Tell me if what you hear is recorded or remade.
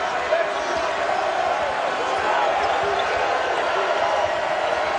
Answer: recorded